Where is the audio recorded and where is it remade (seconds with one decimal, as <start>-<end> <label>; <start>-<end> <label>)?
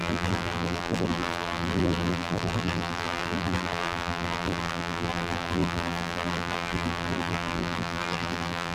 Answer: 0.0-8.7 remade